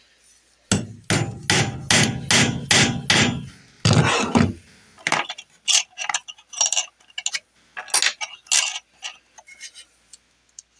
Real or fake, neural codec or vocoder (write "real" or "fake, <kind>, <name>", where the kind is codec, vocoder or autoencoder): real